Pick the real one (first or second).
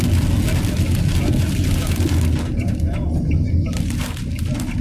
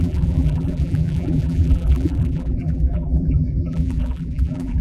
first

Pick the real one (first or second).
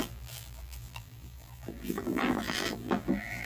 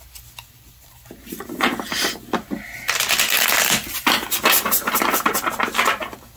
second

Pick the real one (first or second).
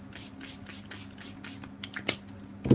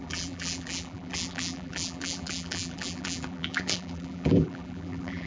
first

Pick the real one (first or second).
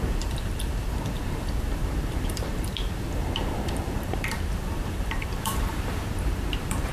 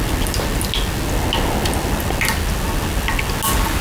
second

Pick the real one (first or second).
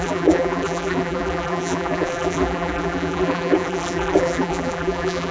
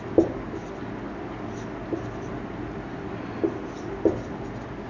second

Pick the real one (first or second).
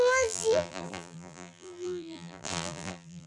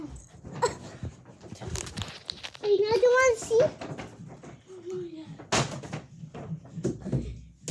second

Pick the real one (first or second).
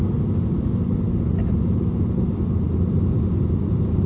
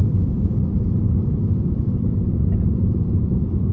first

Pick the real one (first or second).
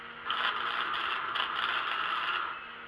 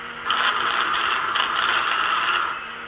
first